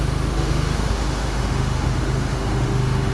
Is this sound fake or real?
fake